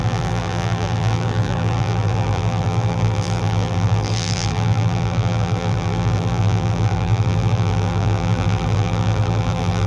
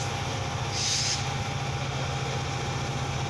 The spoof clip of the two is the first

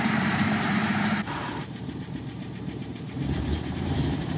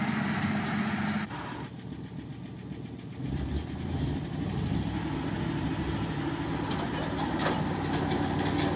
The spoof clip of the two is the first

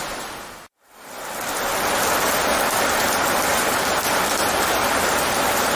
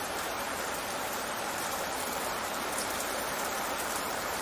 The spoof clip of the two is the second